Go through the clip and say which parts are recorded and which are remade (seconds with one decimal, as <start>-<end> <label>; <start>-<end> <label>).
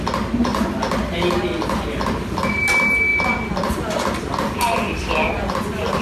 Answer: 0.0-6.0 recorded